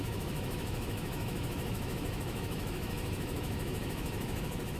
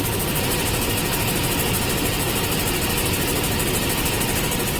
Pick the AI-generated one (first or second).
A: first